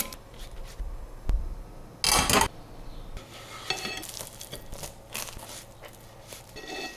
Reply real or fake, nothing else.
real